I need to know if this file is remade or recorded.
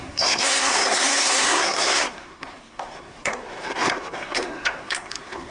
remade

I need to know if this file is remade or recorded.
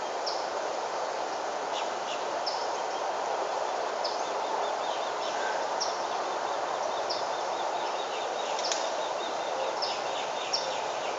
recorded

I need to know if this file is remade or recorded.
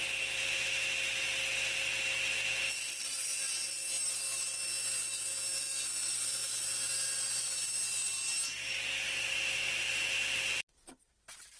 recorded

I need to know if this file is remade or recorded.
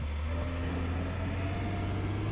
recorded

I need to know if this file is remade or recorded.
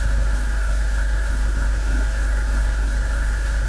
remade